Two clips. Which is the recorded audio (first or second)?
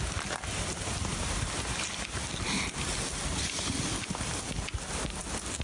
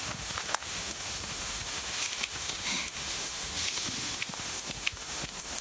first